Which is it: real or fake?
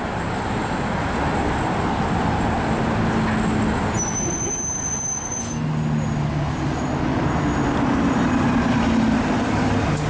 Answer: real